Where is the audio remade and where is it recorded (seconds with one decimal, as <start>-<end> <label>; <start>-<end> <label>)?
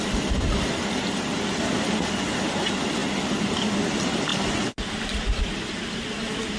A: 0.0-6.6 recorded